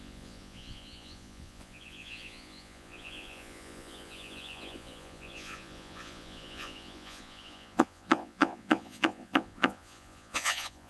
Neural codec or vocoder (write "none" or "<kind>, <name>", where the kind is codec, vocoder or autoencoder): vocoder, Vocos